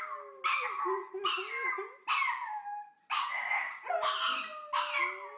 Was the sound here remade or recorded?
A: recorded